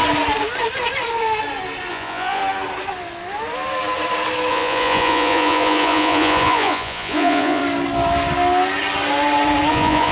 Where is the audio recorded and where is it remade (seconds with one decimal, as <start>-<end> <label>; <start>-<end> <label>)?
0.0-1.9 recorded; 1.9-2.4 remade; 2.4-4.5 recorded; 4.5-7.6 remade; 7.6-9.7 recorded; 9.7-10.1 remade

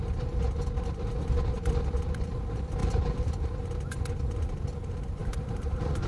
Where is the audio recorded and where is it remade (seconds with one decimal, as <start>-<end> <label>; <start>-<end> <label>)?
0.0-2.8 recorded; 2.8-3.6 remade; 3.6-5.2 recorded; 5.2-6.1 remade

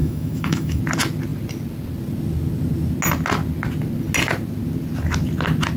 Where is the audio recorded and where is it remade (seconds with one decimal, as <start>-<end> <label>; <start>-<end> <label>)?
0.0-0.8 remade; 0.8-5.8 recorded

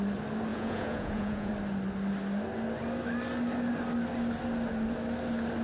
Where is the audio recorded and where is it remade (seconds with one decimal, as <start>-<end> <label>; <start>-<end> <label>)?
0.0-0.5 recorded; 0.5-1.5 remade; 1.5-5.6 recorded

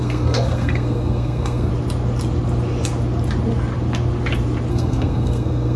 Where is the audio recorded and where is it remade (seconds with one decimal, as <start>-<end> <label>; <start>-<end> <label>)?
0.0-1.7 remade; 1.7-4.7 recorded; 4.7-5.8 remade